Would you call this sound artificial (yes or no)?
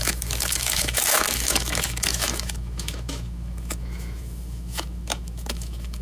yes